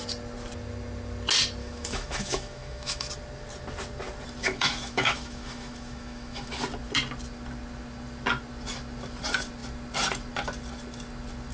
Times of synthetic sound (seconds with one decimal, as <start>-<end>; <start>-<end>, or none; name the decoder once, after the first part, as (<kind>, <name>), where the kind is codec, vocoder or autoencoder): 1.6-3.1 (autoencoder, DAC-VAE); 4.4-6.5